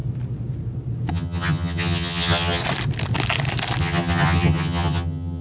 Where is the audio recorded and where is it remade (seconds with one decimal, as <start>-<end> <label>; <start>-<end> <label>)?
0.0-1.1 recorded; 1.1-2.6 remade; 2.6-3.8 recorded; 3.8-5.4 remade